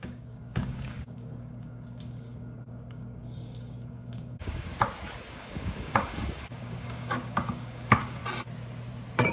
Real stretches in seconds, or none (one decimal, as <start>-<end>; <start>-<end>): 4.7-5.3; 8.2-9.3